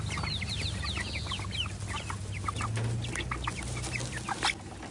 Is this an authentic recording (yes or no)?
yes